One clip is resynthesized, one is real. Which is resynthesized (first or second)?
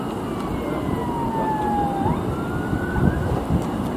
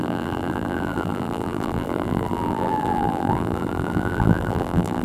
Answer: second